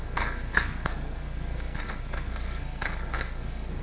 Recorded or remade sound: remade